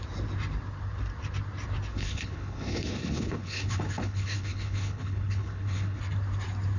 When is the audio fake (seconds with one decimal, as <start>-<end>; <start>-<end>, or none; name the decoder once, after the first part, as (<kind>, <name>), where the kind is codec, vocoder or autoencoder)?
1.9-6.0 (codec, HILCodec)